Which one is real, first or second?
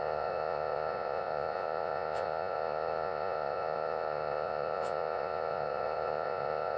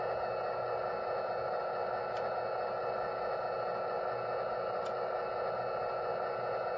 second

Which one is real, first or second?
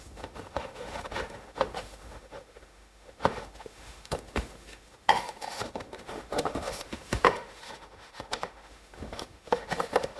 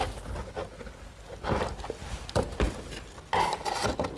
second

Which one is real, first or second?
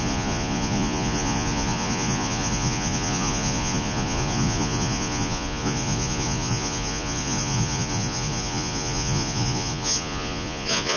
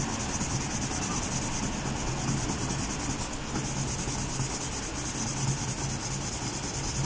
second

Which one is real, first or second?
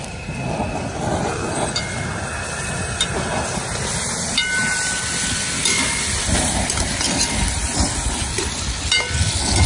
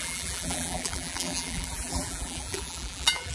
first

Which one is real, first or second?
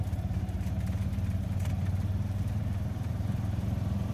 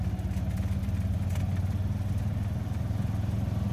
second